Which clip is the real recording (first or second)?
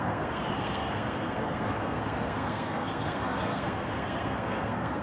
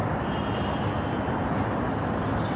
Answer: second